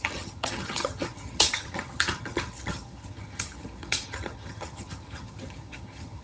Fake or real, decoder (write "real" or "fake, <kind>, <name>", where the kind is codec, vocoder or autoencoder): fake, vocoder, HiFi-GAN